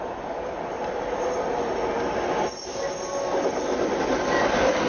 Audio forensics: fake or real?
real